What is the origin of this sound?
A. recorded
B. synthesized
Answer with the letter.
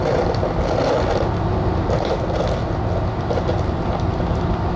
A